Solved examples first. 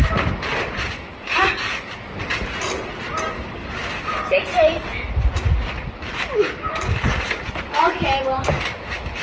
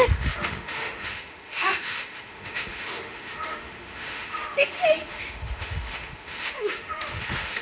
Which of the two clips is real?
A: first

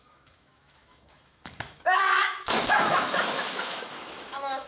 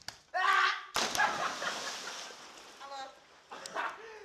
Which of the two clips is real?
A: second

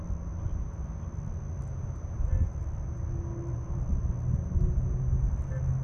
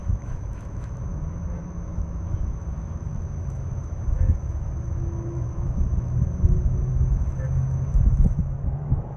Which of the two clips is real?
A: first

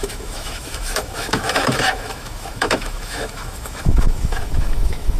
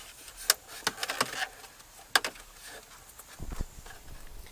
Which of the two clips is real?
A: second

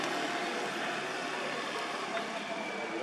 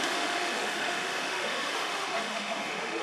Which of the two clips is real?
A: first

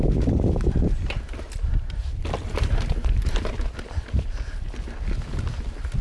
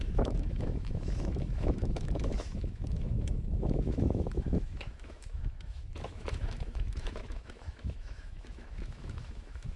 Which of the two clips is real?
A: first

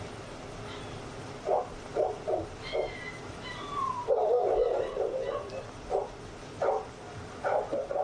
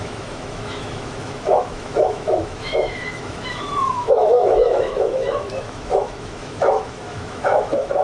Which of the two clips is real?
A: first